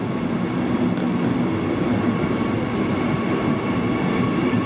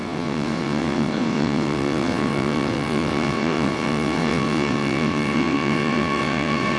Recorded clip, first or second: first